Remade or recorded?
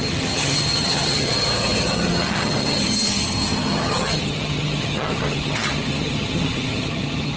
remade